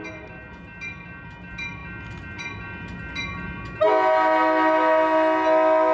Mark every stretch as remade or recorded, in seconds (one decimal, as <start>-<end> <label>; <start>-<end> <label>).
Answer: 0.0-5.9 recorded